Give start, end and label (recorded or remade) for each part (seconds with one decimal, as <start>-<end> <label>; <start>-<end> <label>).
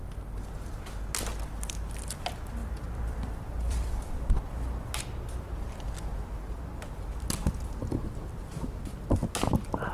0.0-1.3 recorded; 1.3-2.2 remade; 2.2-2.6 recorded; 2.6-4.5 remade; 4.5-9.9 recorded